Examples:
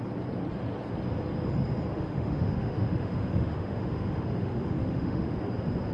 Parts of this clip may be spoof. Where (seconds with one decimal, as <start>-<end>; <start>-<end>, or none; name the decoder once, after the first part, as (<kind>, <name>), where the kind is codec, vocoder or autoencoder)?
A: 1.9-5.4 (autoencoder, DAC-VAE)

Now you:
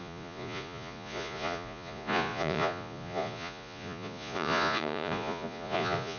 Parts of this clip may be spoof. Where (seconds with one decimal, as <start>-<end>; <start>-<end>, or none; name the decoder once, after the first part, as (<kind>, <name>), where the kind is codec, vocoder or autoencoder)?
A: 0.0-6.2 (vocoder, Vocos)

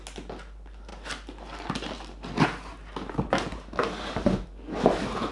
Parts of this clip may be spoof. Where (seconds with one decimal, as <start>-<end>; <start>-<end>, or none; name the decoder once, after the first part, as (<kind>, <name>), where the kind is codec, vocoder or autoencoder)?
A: none

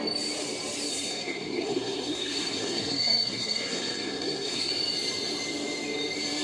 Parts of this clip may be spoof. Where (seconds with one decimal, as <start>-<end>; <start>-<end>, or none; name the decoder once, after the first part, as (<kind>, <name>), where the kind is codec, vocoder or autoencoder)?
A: 0.9-4.7 (codec, SNAC)